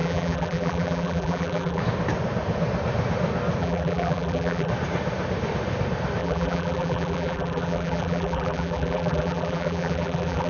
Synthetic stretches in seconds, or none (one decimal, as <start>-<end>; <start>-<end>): 0.0-1.8; 3.6-4.7; 6.2-10.5